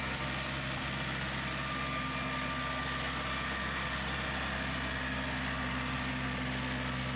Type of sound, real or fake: real